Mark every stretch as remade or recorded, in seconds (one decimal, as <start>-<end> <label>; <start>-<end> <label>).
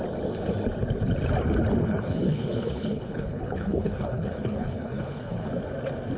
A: 0.0-1.8 recorded; 1.8-5.5 remade; 5.5-6.2 recorded